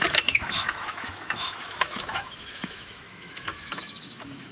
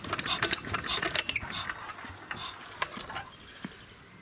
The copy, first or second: first